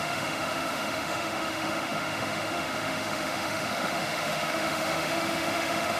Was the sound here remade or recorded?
remade